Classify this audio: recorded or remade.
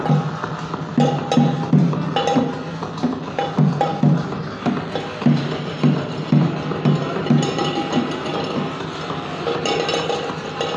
recorded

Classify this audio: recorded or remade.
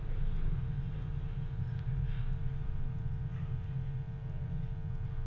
recorded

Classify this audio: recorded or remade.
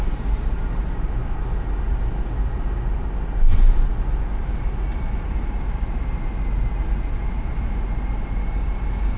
recorded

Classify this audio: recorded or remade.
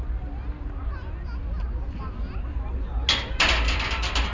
recorded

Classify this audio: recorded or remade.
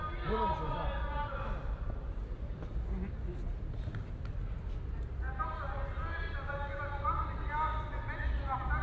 recorded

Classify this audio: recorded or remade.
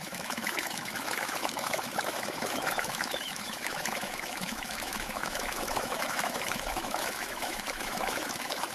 remade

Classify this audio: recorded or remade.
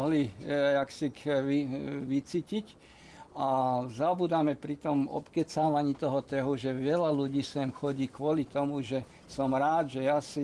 recorded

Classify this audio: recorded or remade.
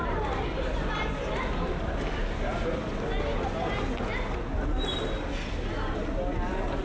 recorded